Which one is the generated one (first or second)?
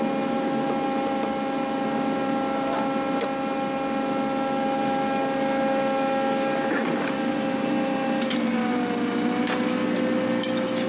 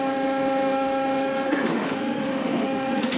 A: second